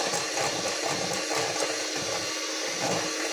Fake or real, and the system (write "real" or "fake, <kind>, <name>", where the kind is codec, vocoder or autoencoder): real